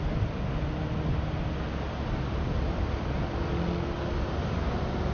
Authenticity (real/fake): real